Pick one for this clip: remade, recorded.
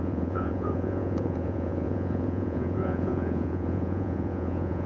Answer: remade